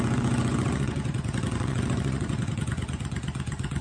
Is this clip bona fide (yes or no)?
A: no